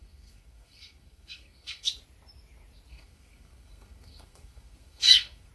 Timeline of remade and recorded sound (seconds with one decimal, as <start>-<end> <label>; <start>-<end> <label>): 0.0-1.9 remade; 1.9-2.9 recorded; 2.9-5.5 remade